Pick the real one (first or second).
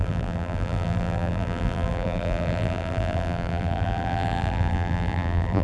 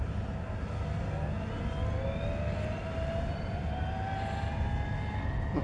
second